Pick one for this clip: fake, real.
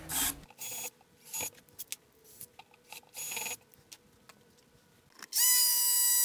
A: real